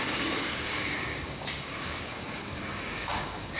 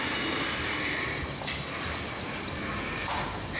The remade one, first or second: first